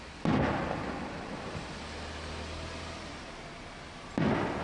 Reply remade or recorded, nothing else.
recorded